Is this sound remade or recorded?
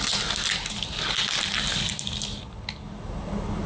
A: recorded